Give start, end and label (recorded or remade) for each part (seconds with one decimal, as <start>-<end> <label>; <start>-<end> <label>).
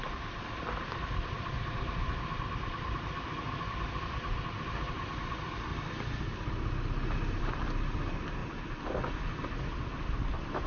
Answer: 0.0-5.7 remade; 5.7-7.4 recorded; 7.4-8.4 remade; 8.4-9.2 recorded; 9.2-10.7 remade